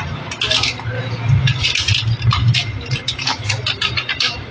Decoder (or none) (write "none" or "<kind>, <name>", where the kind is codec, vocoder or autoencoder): none